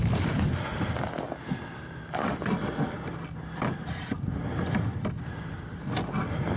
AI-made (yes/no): no